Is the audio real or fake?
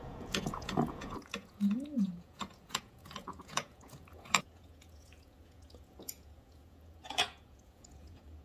fake